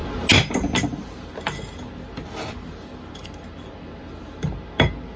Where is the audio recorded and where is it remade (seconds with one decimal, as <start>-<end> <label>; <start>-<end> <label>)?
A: 0.0-5.2 recorded